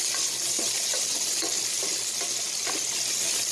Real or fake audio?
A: real